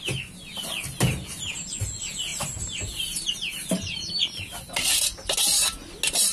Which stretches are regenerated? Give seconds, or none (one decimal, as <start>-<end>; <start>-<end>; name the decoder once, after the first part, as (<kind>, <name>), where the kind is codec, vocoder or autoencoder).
2.3-4.2 (vocoder, BigVGAN v2)